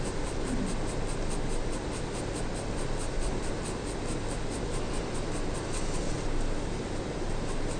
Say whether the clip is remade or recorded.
recorded